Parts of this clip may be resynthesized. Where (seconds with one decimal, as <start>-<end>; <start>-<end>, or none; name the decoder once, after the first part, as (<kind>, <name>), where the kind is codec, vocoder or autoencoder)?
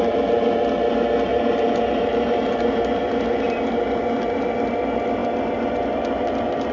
1.3-2.8 (vocoder, BigVGAN v2)